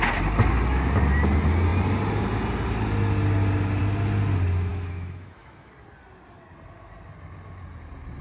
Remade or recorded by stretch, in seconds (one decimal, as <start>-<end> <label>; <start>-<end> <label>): 0.0-4.7 recorded; 4.7-5.7 remade; 5.7-8.2 recorded